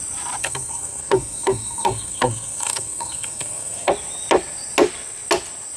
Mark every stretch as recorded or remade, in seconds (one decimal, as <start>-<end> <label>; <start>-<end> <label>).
0.0-0.4 recorded; 0.4-3.9 remade; 3.9-5.8 recorded